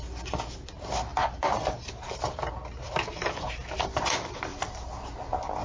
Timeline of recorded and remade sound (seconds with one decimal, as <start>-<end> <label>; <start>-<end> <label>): 0.0-5.6 recorded